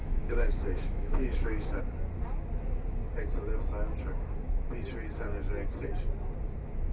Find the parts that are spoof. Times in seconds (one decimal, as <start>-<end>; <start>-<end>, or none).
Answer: 0.0-1.8

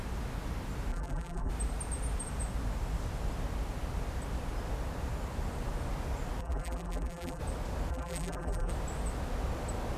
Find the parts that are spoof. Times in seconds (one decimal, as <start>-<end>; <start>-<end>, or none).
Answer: 0.9-1.5; 6.4-7.4; 7.9-8.7

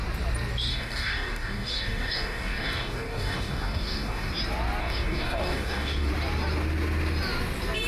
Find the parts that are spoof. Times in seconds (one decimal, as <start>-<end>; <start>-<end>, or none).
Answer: 0.7-4.3; 4.8-6.1